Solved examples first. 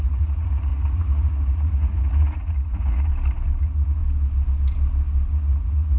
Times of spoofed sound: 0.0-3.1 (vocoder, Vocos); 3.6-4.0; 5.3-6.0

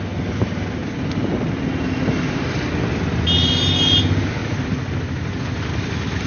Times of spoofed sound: none

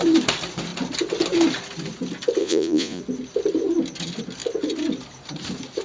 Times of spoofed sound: 2.4-3.0 (vocoder, Vocos)

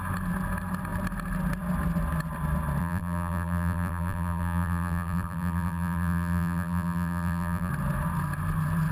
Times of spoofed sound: 2.8-7.7 (vocoder, BigVGAN v2)

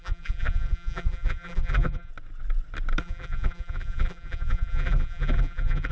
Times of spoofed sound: 0.0-2.1 (vocoder, BigVGAN v2); 3.0-5.9

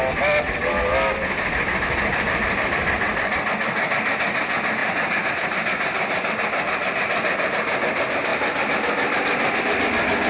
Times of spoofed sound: none